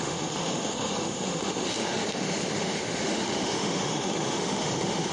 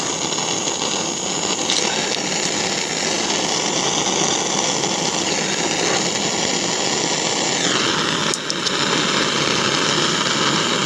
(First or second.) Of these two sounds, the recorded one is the second